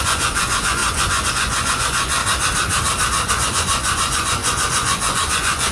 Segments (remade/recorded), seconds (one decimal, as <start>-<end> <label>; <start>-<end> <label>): 0.0-2.2 remade; 2.2-3.3 recorded; 3.3-5.7 remade